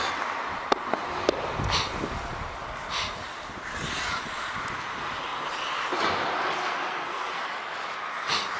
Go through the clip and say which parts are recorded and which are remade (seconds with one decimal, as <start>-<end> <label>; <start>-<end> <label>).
0.0-6.6 recorded; 6.6-7.4 remade; 7.4-8.6 recorded